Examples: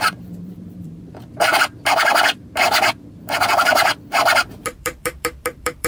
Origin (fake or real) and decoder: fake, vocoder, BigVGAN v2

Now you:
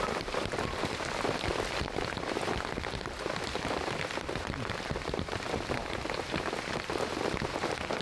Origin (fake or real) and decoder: fake, vocoder, BigVGAN v2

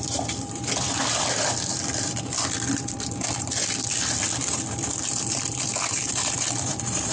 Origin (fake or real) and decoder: fake, vocoder, BigVGAN v2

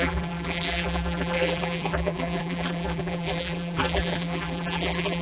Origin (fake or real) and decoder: fake, vocoder, BigVGAN v2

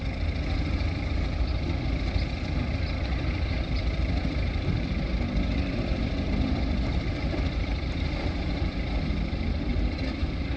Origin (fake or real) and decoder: fake, vocoder, BigVGAN v2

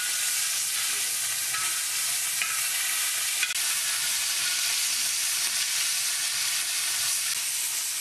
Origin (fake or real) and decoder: real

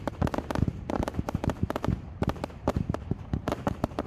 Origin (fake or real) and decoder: fake, vocoder, BigVGAN v2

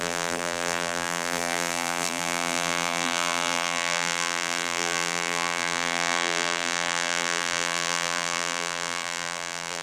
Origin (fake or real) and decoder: fake, vocoder, BigVGAN v2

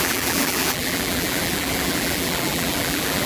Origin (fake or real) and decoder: fake, vocoder, BigVGAN v2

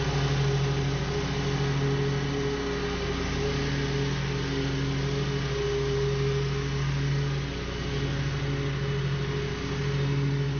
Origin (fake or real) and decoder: real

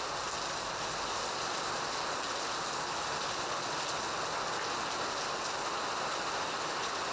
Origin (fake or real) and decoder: real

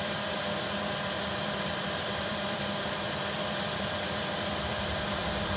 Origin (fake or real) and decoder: fake, vocoder, BigVGAN v2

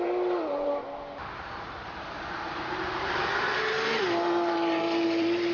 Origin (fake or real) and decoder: fake, vocoder, BigVGAN v2